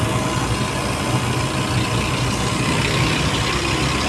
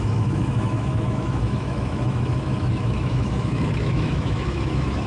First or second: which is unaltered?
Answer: first